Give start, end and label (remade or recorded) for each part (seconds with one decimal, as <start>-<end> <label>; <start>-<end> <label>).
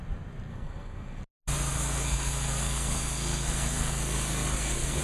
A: 0.0-0.5 recorded; 0.5-1.2 remade; 1.2-1.7 recorded; 1.7-5.0 remade